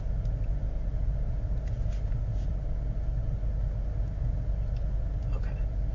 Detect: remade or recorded recorded